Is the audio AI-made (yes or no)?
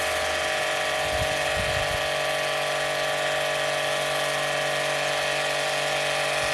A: no